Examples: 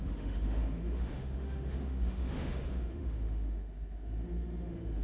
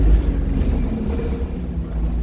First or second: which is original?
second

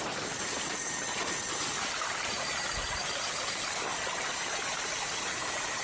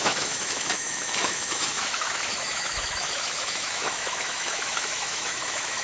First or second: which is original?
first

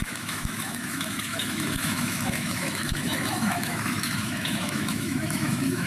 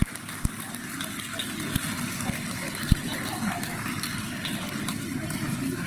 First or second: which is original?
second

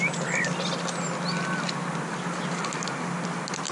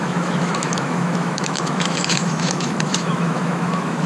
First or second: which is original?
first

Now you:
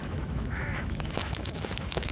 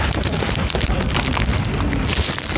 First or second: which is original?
second